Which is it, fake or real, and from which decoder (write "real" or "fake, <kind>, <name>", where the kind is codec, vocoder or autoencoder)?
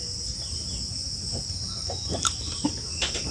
real